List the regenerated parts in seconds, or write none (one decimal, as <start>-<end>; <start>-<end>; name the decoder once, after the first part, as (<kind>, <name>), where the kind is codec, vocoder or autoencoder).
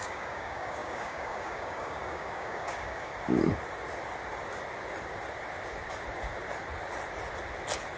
0.0-3.1 (codec, DAC)